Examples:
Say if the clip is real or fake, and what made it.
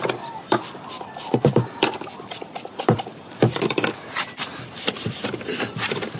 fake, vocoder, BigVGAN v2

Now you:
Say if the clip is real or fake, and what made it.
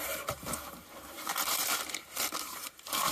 fake, vocoder, BigVGAN v2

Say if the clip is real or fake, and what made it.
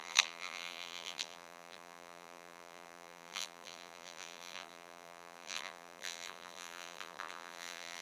fake, vocoder, BigVGAN v2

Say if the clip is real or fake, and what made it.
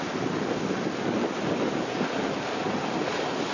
real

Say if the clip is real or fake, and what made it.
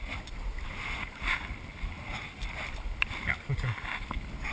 real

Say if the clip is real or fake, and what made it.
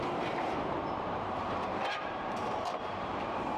fake, vocoder, BigVGAN v2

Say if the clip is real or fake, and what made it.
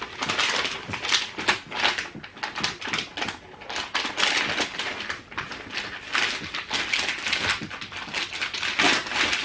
real